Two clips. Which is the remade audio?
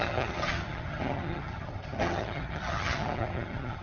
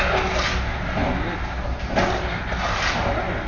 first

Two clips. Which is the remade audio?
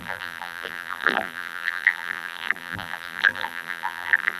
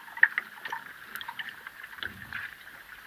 first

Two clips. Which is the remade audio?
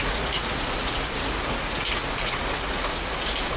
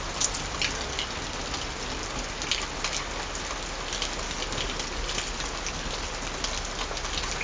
first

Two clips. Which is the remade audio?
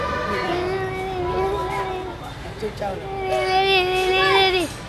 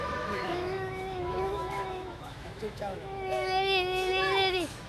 second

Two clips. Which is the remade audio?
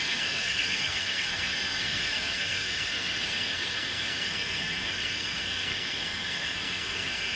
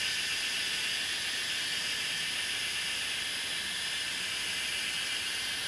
first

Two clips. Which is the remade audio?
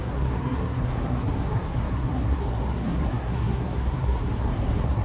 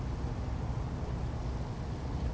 first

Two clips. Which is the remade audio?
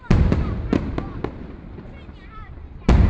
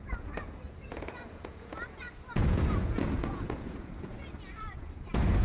second